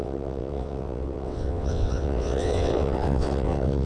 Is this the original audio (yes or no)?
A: no